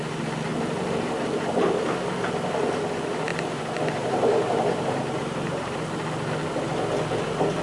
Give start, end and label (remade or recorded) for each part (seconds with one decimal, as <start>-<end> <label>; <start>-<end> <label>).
0.0-3.3 recorded; 3.3-5.8 remade; 5.8-7.6 recorded